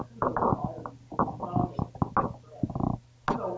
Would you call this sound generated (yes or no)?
no